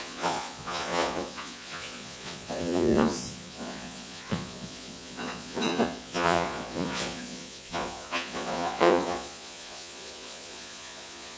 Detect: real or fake fake